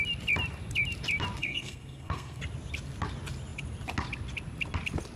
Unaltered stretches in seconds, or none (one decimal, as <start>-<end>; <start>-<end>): 0.0-1.4; 2.4-5.2

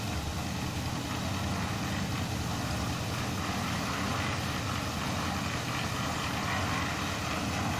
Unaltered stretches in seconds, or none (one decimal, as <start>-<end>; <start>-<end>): 0.0-7.8

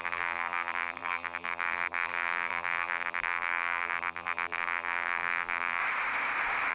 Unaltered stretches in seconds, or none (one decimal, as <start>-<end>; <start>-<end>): 5.8-6.7

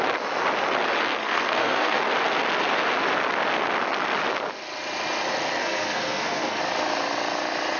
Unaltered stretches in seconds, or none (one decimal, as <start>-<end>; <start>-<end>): 0.0-1.2; 2.0-5.6; 6.6-7.8

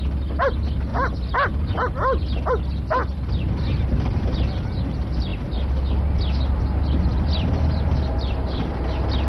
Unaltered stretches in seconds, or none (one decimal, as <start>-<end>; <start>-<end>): 0.0-3.0; 3.6-9.3

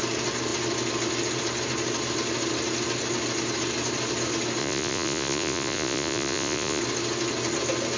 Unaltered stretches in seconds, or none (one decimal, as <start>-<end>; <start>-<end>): 0.0-4.6; 6.8-8.0

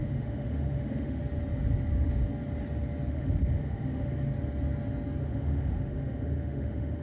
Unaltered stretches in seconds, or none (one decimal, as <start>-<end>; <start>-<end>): 1.2-3.1; 4.1-5.2

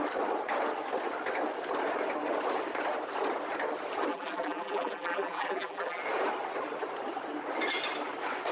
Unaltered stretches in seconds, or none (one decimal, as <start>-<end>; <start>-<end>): 0.0-4.1; 6.0-8.5